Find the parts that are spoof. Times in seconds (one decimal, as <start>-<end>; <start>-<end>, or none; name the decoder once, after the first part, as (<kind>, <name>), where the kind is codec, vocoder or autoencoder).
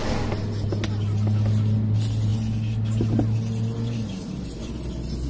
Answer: none